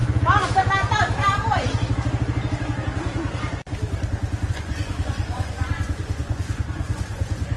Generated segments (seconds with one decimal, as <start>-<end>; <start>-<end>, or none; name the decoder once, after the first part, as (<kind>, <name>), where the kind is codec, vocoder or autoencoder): 4.5-7.6 (vocoder, Vocos)